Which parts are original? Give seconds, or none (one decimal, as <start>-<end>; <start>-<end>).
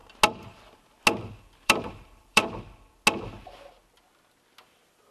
0.0-1.4; 2.4-4.6